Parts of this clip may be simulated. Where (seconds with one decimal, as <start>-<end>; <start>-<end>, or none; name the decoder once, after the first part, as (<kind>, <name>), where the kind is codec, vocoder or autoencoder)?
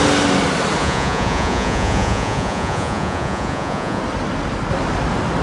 0.8-4.0 (vocoder, Vocos)